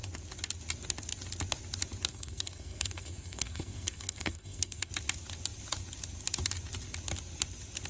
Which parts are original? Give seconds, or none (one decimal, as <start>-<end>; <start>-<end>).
0.0-2.1; 4.9-7.9